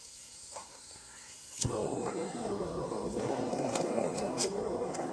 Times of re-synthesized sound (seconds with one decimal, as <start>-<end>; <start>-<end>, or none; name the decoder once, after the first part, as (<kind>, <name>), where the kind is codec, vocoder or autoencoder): 0.0-5.1 (codec, SNAC)